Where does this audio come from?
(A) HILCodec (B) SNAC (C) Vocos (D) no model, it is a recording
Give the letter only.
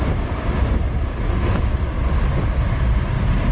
D